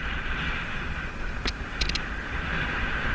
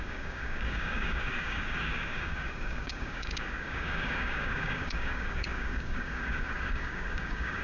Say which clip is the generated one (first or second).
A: second